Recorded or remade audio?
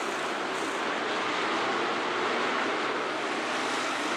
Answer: recorded